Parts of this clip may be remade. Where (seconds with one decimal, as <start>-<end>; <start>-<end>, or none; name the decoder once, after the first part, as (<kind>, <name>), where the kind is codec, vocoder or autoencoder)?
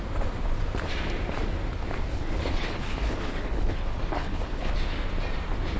2.1-4.7 (codec, HILCodec)